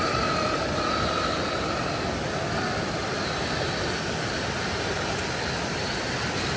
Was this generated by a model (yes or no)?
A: no